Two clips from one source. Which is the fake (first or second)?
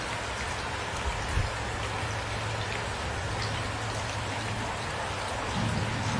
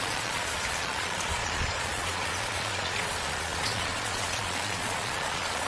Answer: second